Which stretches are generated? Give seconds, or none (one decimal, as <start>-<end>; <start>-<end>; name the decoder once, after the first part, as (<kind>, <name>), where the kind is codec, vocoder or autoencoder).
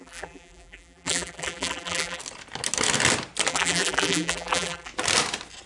0.0-2.2 (vocoder, BigVGAN v2); 3.5-4.9